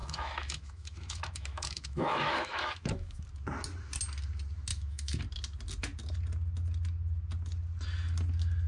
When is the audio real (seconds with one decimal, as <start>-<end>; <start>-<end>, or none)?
3.2-4.7; 5.2-8.7